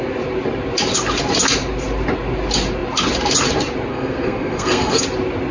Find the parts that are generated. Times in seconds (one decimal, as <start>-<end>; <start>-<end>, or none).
3.9-5.0